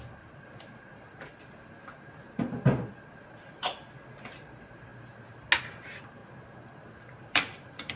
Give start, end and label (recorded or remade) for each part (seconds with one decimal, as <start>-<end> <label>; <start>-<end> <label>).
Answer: 0.0-1.8 remade; 1.8-3.3 recorded; 3.3-4.9 remade; 4.9-5.6 recorded; 5.6-6.2 remade; 6.2-7.0 recorded; 7.0-8.0 remade

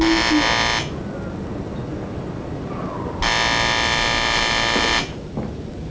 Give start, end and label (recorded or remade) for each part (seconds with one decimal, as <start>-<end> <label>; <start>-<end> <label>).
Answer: 0.0-5.9 recorded